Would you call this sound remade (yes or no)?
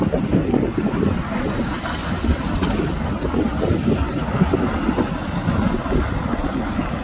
no